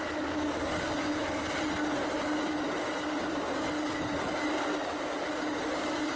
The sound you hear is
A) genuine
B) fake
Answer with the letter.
A